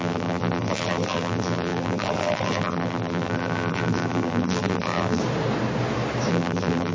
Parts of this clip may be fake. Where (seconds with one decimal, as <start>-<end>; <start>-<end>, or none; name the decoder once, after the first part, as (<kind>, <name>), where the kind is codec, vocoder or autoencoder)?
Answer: 0.0-5.2 (vocoder, BigVGAN v2); 6.3-6.9